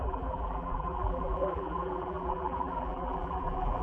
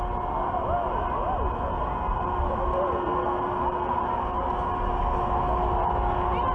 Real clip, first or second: second